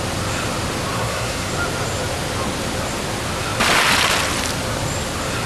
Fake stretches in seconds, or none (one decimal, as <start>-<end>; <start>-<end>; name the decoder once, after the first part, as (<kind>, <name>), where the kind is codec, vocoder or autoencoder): 0.9-1.5 (codec, SNAC)